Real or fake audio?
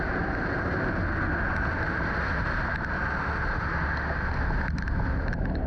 real